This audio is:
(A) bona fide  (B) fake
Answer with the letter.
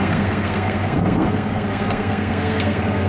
B